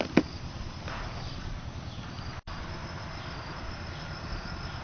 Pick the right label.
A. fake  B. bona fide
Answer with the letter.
B